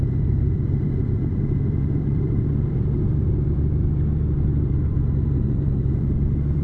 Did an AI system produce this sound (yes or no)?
yes